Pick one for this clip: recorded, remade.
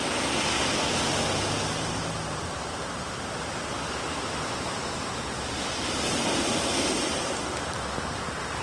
recorded